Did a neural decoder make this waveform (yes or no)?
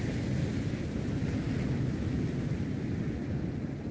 no